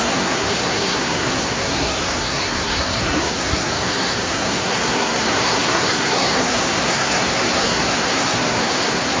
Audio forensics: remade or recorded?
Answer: remade